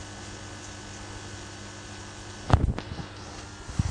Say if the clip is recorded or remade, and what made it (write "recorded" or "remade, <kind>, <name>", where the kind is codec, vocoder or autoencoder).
recorded